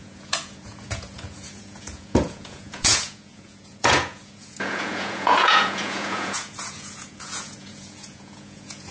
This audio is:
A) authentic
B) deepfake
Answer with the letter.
B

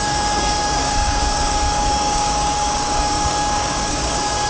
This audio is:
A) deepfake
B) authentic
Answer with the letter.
A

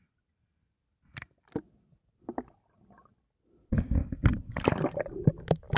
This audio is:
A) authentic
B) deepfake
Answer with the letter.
A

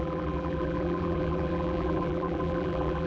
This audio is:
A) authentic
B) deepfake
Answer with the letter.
B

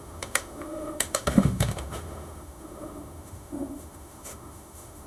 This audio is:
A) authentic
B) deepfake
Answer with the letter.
B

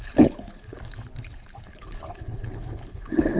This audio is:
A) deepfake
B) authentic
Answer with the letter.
A